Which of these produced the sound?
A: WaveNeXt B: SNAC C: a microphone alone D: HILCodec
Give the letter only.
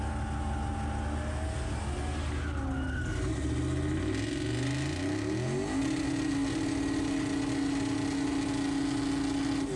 C